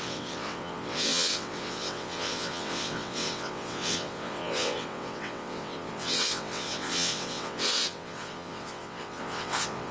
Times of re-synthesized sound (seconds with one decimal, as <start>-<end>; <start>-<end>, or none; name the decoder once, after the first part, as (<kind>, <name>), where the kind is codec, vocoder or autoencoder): 0.0-9.9 (vocoder, WaveNeXt)